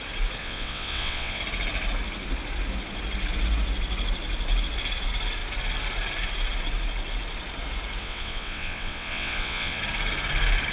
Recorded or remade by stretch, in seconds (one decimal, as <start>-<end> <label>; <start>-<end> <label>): 0.0-0.4 recorded; 0.4-1.4 remade; 1.4-8.0 recorded; 8.0-9.8 remade; 9.8-10.7 recorded